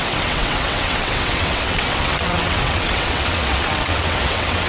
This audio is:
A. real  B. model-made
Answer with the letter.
B